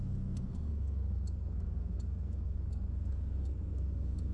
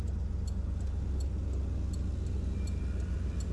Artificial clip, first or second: first